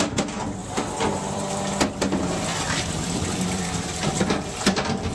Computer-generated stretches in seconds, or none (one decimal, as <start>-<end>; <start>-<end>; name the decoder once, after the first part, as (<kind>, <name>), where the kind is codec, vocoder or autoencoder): 0.6-1.6 (vocoder, BigVGAN v2); 2.5-4.6